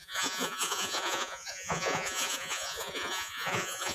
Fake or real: fake